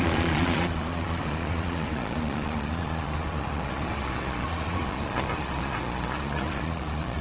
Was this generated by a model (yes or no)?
yes